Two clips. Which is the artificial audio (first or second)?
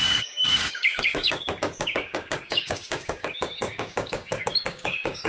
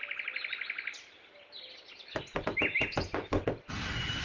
first